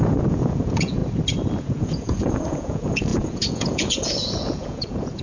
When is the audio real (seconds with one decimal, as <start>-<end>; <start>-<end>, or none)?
1.0-1.6